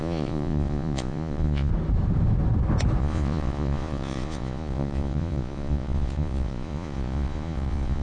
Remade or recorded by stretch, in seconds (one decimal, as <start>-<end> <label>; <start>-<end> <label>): 0.0-1.7 remade; 1.7-3.0 recorded; 3.0-8.0 remade